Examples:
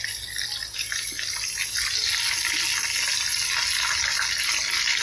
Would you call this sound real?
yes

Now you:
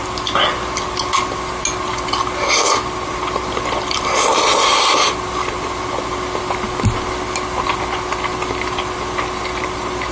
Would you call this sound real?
yes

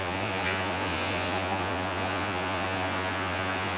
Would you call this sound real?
no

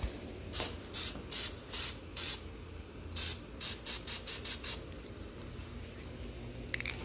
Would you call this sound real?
yes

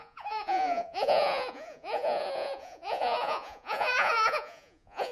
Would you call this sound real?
no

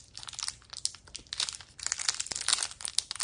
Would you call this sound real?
yes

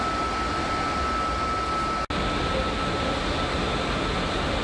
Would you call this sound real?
yes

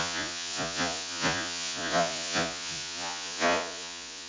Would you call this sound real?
no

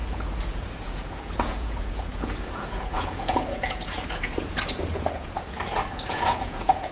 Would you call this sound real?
no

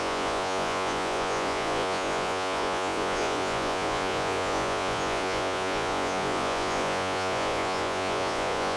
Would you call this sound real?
no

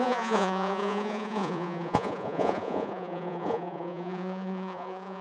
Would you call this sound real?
no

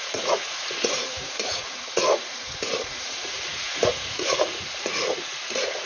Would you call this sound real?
no